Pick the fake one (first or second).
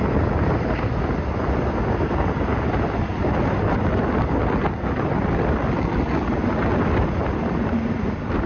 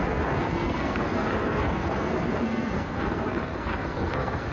second